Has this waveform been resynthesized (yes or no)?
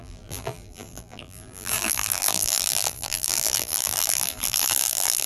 yes